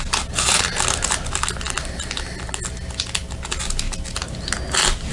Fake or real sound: real